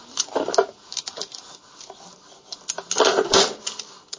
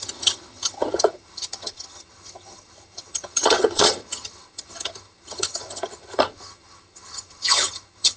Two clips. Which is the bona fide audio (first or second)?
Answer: first